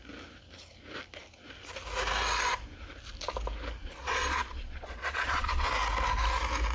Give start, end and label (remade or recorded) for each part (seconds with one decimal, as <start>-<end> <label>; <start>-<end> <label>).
0.0-3.8 recorded; 3.8-5.7 remade; 5.7-6.7 recorded